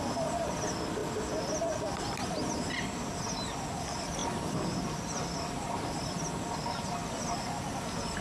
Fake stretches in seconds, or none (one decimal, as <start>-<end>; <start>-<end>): none